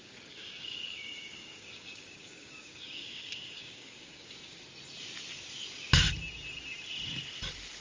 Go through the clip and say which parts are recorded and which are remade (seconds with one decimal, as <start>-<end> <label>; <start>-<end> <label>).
0.0-4.6 remade; 4.6-7.8 recorded